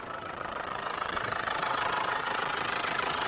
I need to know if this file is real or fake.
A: fake